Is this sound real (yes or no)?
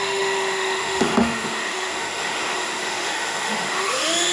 no